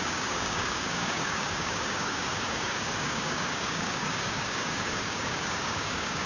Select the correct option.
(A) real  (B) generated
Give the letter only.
B